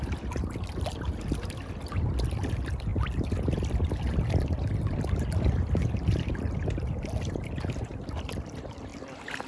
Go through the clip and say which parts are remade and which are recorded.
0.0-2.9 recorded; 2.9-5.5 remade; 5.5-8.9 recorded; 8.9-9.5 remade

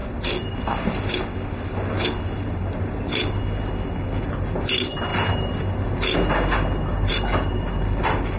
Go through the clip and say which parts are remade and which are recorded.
0.0-8.4 recorded

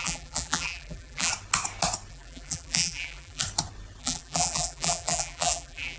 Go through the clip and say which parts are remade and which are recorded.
0.0-1.3 remade; 1.3-2.1 recorded; 2.1-3.4 remade; 3.4-4.0 recorded; 4.0-6.0 remade

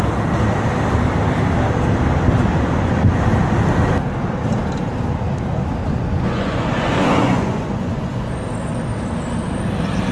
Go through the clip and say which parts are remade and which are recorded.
0.0-2.5 recorded; 2.5-3.2 remade; 3.2-5.8 recorded; 5.8-8.3 remade; 8.3-10.1 recorded

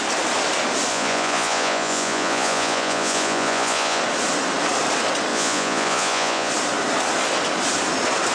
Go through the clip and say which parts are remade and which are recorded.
0.0-0.9 recorded; 0.9-4.0 remade; 4.0-5.3 recorded; 5.3-6.5 remade; 6.5-8.3 recorded

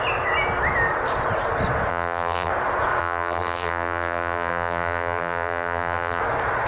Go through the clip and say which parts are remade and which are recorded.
0.0-1.9 recorded; 1.9-2.5 remade; 2.5-3.0 recorded; 3.0-6.2 remade; 6.2-6.7 recorded

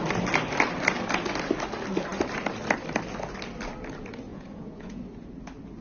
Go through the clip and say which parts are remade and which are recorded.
0.0-4.3 recorded; 4.3-5.0 remade; 5.0-5.8 recorded

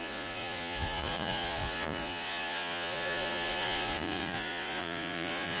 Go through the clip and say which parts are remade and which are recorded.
0.0-5.6 remade